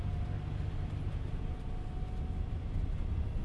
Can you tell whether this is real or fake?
real